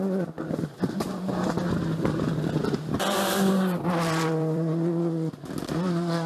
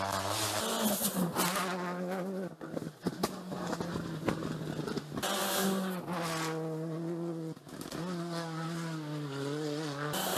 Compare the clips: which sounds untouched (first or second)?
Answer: second